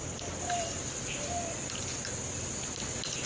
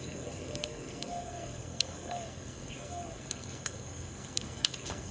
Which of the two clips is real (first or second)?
first